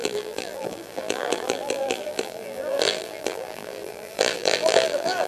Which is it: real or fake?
fake